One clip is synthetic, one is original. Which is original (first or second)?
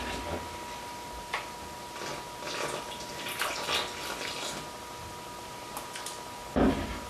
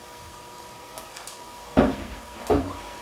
first